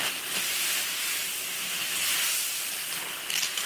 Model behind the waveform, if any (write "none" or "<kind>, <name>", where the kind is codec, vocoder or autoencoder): none